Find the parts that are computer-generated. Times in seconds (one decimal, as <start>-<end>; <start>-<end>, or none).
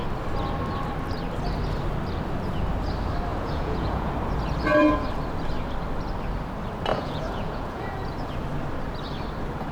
3.3-4.1; 6.9-8.3